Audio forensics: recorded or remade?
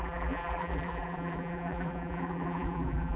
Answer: remade